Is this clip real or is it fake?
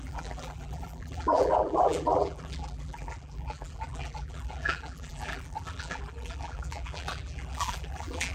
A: fake